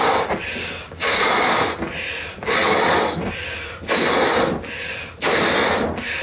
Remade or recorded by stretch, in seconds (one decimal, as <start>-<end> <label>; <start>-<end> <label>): 0.0-0.6 recorded; 0.6-1.2 remade; 1.2-6.2 recorded